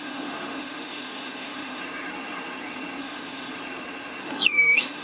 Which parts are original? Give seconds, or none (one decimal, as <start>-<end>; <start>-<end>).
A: 1.8-3.0; 3.5-4.2